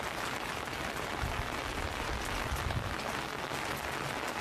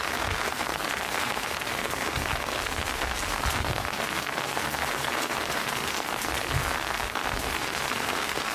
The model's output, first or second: second